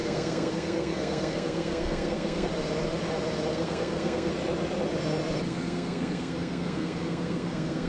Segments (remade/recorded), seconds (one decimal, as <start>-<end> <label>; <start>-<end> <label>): 0.0-2.5 remade; 2.5-3.5 recorded; 3.5-4.3 remade; 4.3-5.5 recorded; 5.5-7.9 remade